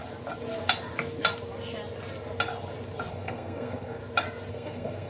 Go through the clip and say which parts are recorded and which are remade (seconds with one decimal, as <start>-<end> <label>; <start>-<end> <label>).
0.0-3.1 recorded; 3.1-4.0 remade; 4.0-4.5 recorded; 4.5-5.1 remade